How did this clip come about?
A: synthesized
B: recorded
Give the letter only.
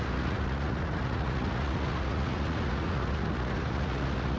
A